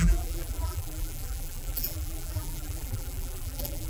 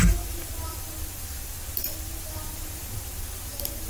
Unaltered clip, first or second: second